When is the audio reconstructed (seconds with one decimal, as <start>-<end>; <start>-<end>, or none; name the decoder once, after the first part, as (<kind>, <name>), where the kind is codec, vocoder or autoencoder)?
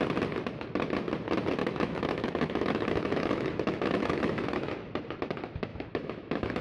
1.6-4.9 (autoencoder, DAC-VAE); 5.7-6.6